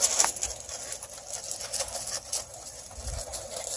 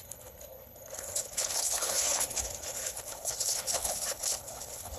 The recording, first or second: first